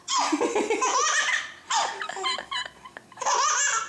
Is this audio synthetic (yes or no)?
no